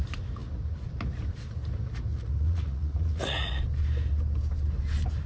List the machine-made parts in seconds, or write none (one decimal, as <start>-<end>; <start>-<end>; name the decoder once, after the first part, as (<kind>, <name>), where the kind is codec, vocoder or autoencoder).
2.1-3.6 (vocoder, Vocos)